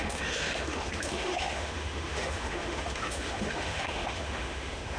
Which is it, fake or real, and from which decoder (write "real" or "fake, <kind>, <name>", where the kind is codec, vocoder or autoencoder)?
fake, autoencoder, DAC-VAE